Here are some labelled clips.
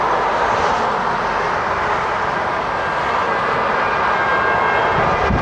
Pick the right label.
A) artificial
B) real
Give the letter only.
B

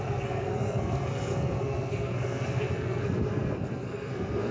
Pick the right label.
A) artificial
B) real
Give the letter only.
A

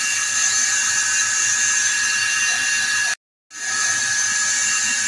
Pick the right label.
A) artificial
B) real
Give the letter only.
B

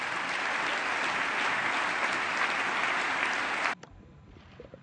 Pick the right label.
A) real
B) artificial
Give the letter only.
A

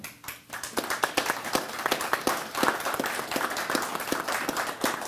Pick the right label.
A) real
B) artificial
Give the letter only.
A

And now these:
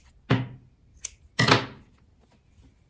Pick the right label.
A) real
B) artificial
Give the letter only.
A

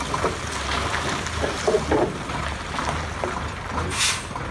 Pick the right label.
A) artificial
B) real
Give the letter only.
B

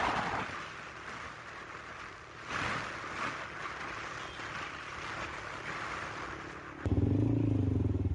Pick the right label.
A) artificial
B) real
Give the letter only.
B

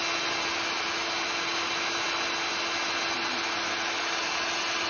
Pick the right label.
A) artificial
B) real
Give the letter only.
B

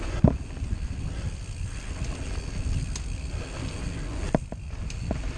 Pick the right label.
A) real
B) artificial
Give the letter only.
A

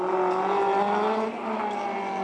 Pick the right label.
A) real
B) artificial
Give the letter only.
A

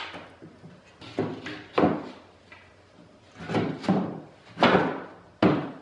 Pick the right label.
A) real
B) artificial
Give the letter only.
A